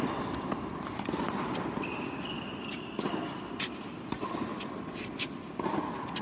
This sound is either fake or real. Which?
real